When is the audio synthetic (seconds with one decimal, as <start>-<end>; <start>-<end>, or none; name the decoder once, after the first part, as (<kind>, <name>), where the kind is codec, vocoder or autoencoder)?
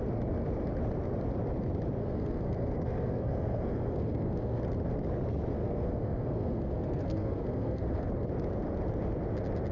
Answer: 2.0-4.6 (codec, SNAC); 5.5-8.1